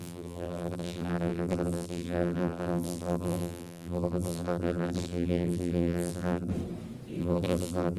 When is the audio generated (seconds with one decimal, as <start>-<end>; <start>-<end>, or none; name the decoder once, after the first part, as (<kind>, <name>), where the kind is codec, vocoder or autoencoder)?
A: 0.0-6.5 (vocoder, BigVGAN v2); 7.2-8.0